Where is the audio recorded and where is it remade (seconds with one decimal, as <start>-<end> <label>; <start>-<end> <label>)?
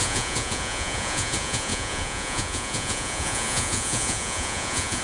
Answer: 0.0-5.0 remade